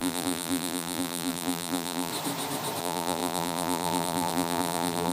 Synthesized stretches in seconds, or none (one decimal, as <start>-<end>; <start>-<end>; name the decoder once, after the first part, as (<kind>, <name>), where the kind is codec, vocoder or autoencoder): 0.0-2.1 (vocoder, BigVGAN v2); 2.8-5.1